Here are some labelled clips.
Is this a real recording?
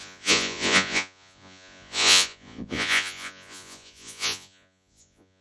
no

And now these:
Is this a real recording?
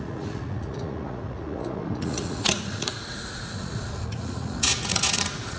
no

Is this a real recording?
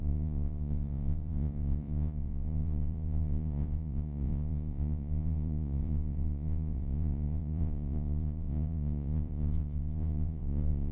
no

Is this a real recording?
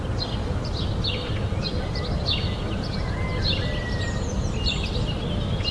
yes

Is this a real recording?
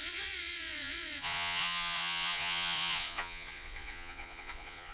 no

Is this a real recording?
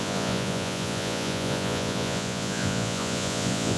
no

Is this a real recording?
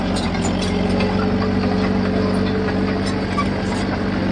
yes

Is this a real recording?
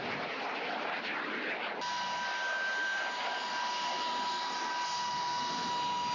yes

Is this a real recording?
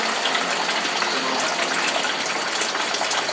yes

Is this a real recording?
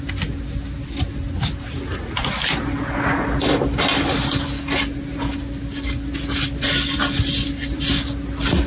yes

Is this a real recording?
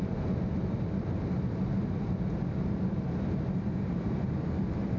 yes